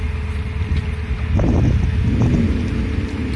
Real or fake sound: real